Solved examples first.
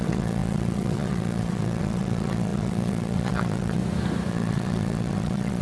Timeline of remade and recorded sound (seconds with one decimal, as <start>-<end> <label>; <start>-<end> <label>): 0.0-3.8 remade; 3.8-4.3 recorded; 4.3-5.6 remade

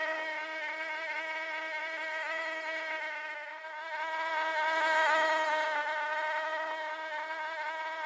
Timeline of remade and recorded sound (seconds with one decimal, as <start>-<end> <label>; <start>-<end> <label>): 0.0-8.1 recorded

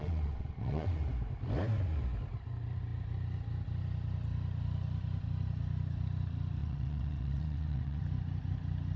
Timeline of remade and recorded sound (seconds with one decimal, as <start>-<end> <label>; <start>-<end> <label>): 0.0-1.0 remade; 1.0-6.6 recorded; 6.6-8.0 remade; 8.0-9.0 recorded

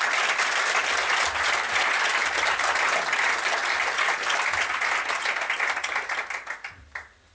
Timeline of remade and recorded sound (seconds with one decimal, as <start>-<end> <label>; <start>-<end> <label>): 0.0-7.3 recorded

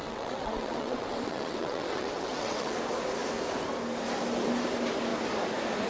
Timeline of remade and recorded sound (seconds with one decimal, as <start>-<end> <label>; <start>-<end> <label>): 0.0-2.8 remade; 2.8-5.9 recorded

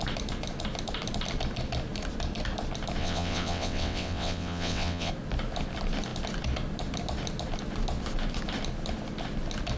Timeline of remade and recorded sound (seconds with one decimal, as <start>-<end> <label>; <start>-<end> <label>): 0.0-3.0 recorded; 3.0-5.1 remade; 5.1-9.8 recorded

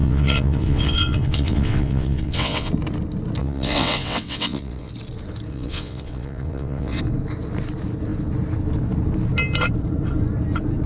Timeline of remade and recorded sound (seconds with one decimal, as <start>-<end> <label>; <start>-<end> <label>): 0.0-2.7 remade; 2.7-3.4 recorded; 3.4-4.9 remade; 4.9-5.5 recorded; 5.5-7.0 remade; 7.0-10.9 recorded

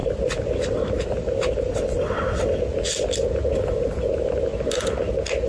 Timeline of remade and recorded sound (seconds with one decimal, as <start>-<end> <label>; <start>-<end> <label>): 0.0-1.7 recorded; 1.7-2.7 remade; 2.7-5.5 recorded